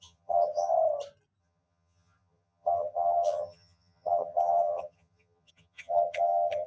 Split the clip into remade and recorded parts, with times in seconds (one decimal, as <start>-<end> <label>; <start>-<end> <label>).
0.0-0.7 remade; 0.7-1.4 recorded; 1.4-6.7 remade